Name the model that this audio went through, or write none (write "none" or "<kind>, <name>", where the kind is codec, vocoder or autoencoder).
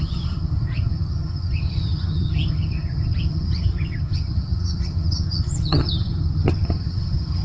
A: vocoder, HiFi-GAN